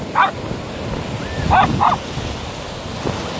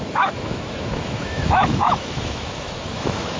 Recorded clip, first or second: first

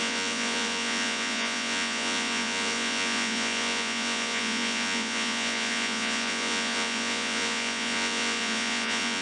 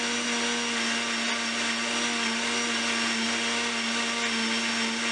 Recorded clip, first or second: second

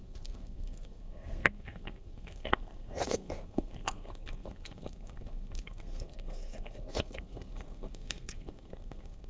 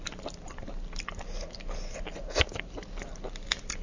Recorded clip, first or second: second